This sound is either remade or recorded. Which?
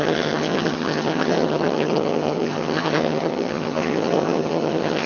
remade